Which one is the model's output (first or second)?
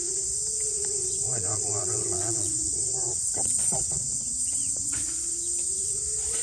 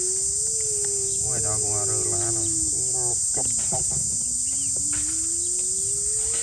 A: first